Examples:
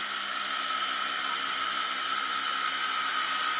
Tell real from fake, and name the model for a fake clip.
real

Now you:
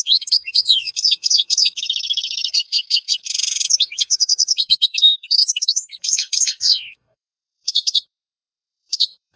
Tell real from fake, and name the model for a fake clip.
fake, codec, SNAC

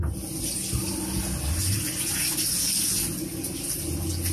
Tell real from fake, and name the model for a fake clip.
real